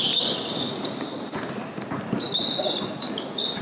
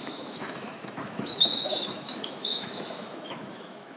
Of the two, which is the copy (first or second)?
second